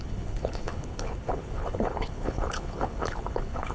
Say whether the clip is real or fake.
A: fake